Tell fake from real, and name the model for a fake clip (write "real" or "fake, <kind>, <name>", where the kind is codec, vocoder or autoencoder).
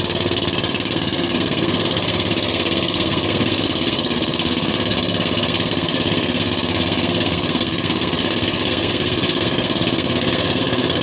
fake, codec, SNAC